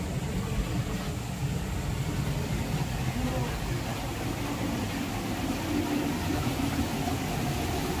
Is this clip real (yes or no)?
yes